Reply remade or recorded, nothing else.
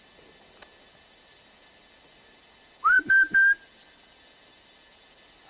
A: remade